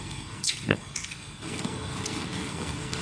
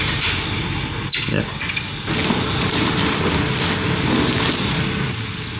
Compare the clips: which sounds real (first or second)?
second